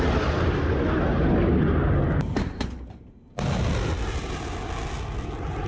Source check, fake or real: real